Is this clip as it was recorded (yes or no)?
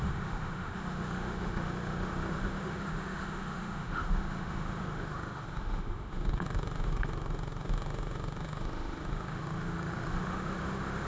no